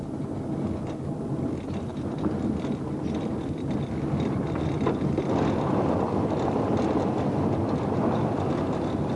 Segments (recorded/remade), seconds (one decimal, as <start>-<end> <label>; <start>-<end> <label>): 0.0-9.2 recorded